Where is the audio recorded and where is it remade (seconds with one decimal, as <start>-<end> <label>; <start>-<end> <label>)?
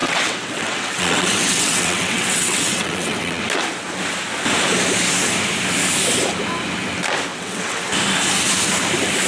0.0-3.4 remade; 3.4-7.3 recorded; 7.3-7.8 remade; 7.8-9.3 recorded